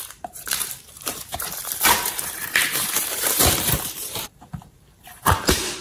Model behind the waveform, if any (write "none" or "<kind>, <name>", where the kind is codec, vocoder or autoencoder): vocoder, BigVGAN v2